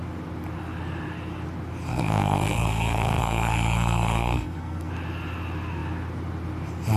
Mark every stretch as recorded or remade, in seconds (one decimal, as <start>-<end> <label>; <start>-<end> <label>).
0.0-1.9 recorded; 1.9-4.9 remade; 4.9-7.0 recorded